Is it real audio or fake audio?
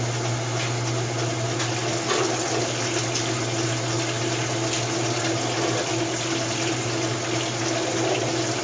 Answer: real